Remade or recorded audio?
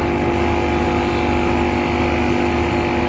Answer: recorded